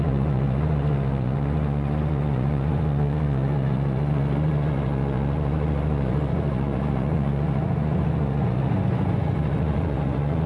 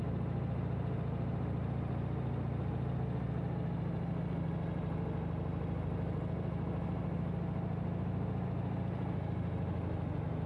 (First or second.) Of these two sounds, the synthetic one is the first